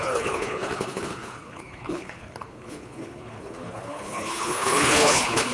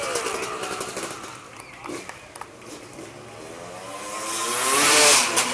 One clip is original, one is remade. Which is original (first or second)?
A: second